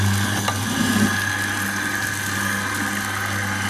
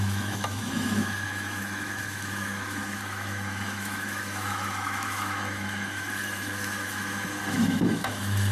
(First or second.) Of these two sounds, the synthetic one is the second